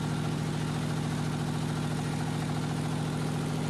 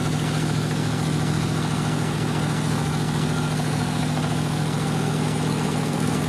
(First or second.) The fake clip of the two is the second